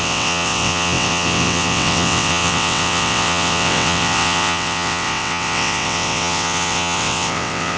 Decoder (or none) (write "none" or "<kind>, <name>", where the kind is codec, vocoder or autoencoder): vocoder, WaveNeXt